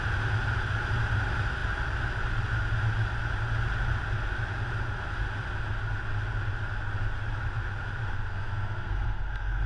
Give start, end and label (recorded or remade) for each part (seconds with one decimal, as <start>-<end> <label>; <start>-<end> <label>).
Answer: 0.0-8.3 recorded; 8.3-9.7 remade